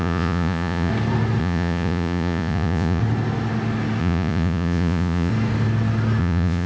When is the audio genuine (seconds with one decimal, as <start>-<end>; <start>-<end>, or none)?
0.9-1.4; 3.0-4.0; 5.3-6.2